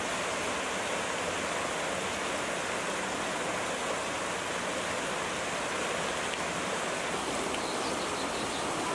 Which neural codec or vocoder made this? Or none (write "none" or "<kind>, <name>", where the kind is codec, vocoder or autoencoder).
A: none